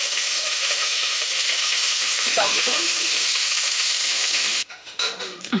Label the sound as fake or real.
fake